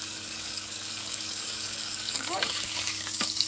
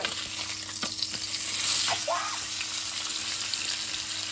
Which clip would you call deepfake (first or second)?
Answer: first